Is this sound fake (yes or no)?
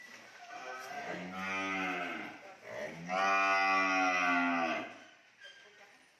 no